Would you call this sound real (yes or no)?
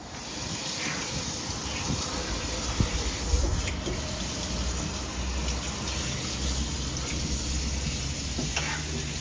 yes